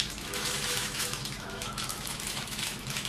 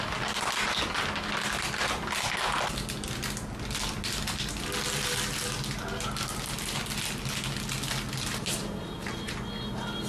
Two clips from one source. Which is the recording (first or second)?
second